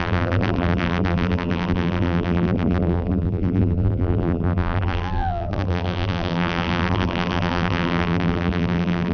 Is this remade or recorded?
remade